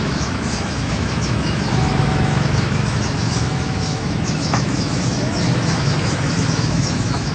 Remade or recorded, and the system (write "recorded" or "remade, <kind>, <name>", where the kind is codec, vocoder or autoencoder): remade, autoencoder, DAC-VAE